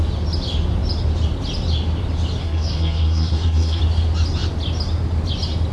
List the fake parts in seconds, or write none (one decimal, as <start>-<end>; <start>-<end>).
2.4-3.8